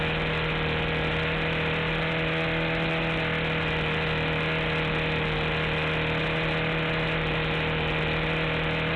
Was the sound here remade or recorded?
recorded